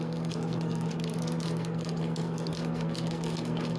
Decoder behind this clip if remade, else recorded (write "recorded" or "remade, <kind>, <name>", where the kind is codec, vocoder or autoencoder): remade, codec, SNAC